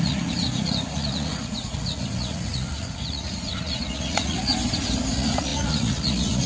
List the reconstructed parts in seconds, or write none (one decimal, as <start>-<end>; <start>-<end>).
0.0-4.5; 5.1-6.5